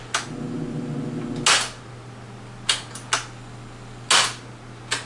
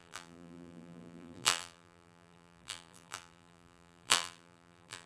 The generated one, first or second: second